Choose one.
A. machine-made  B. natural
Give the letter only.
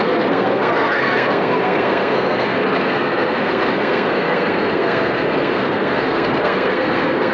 A